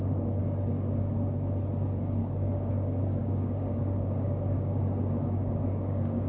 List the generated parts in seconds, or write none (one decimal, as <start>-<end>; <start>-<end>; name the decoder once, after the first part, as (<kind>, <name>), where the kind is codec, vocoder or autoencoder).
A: 0.4-1.1 (codec, DAC); 2.2-6.3